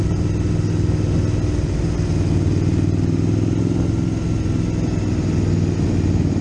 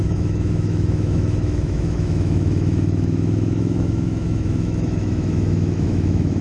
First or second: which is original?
first